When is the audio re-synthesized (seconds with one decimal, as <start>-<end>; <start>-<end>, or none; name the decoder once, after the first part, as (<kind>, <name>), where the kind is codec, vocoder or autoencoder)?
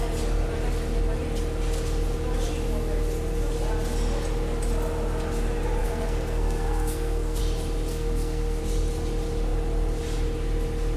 5.8-7.4 (codec, SNAC); 7.9-8.6